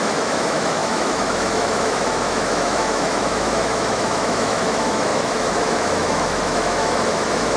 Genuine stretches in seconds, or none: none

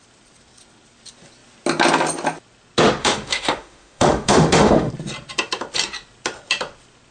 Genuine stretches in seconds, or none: 0.0-3.0; 4.9-7.1

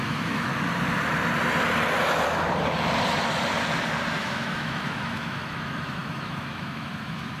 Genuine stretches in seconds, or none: 0.5-4.2

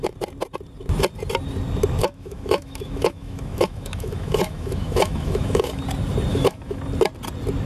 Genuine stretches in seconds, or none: 0.0-2.0; 5.8-6.3; 6.8-7.7

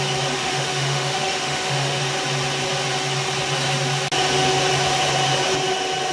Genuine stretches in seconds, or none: 0.0-0.4; 2.0-6.1